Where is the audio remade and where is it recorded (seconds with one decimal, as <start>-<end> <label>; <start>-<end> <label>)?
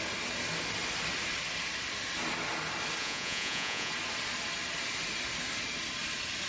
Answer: 0.0-3.0 recorded; 3.0-3.9 remade; 3.9-6.5 recorded